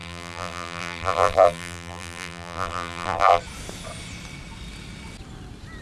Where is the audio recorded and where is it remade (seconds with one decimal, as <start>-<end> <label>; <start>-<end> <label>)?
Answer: 0.0-3.4 remade; 3.4-5.8 recorded